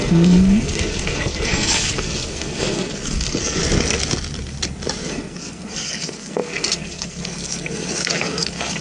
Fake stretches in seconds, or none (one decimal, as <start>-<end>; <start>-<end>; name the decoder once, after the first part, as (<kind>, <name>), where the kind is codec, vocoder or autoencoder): 0.0-3.6 (codec, SNAC); 5.1-8.8